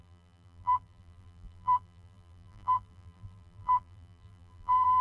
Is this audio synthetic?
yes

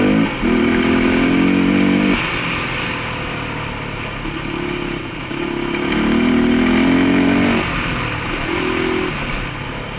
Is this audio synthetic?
no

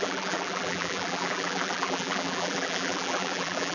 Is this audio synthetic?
yes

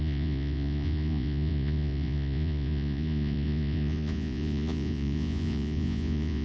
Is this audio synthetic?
yes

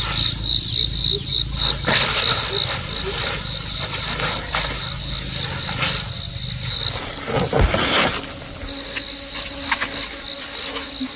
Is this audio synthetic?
no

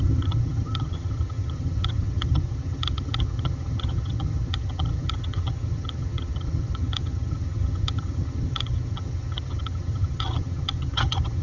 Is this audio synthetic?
yes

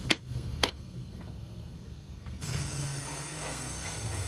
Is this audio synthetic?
yes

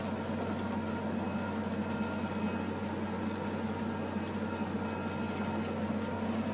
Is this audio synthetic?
no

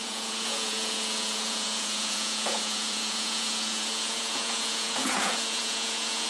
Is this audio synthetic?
yes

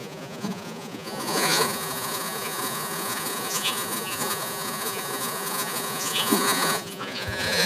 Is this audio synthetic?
yes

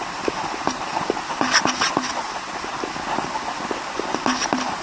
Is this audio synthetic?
no